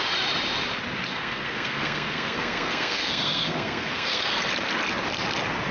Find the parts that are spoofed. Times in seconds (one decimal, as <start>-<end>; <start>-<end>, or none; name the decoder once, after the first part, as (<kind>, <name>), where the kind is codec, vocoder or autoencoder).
1.1-4.5 (codec, SNAC)